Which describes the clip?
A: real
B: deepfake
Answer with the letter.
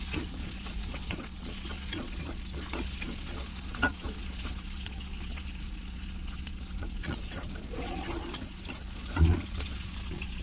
B